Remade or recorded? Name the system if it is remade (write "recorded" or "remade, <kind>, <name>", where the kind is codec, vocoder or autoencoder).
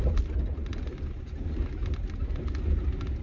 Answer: recorded